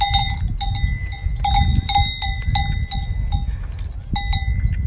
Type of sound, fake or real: real